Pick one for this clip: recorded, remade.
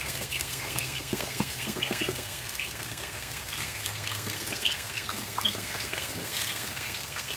remade